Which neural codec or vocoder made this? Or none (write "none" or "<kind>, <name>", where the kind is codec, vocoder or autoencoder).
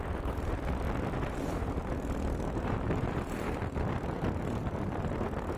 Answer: none